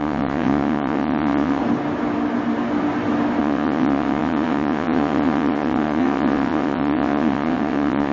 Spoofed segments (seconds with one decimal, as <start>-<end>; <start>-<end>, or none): 0.0-1.6; 3.4-8.1